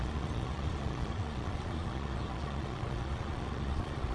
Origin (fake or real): fake